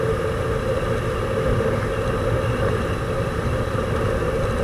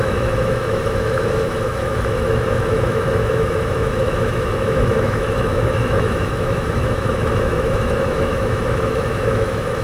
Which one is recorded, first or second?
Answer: first